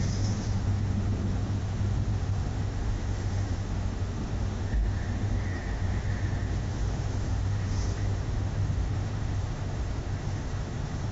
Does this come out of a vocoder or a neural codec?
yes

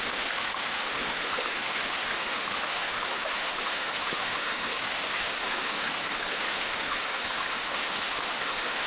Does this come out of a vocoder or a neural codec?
yes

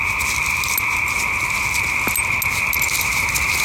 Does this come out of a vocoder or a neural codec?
no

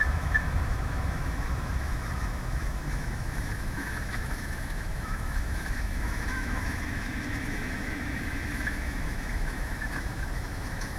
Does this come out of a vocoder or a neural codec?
yes